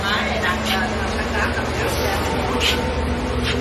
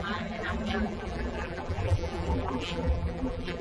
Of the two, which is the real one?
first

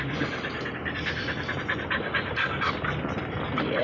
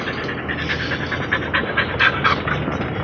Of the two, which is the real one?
second